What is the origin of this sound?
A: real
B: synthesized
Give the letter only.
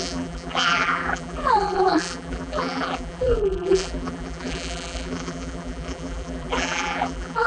B